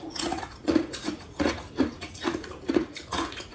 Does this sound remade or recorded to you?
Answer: remade